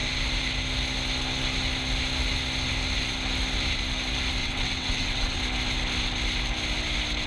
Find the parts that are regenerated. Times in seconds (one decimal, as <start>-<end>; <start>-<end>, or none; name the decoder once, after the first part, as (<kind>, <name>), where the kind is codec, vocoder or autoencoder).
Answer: 4.4-5.4 (vocoder, WaveNeXt)